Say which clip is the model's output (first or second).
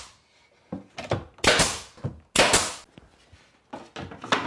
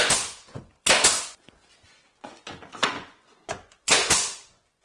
second